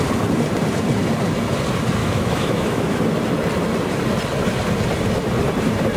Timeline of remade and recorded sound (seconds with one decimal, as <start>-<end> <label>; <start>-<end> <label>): 0.0-2.0 recorded; 2.0-3.0 remade; 3.0-6.0 recorded